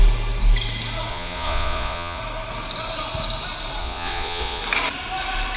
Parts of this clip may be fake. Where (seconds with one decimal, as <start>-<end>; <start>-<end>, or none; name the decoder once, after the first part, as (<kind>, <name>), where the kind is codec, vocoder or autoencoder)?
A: 1.1-2.2 (vocoder, Vocos); 3.8-4.6